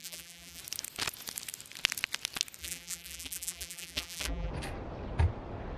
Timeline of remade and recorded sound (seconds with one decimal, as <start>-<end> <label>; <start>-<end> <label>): 0.0-0.6 remade; 0.6-2.6 recorded; 2.6-4.5 remade; 4.5-5.8 recorded